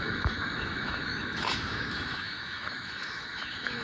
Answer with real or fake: fake